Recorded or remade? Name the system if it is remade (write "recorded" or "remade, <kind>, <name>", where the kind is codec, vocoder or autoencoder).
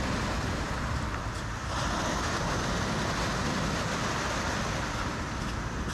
recorded